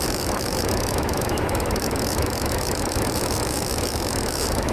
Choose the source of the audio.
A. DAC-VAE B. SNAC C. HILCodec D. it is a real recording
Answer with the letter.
A